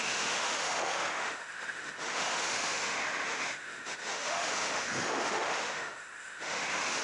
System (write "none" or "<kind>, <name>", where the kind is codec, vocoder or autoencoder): autoencoder, DAC-VAE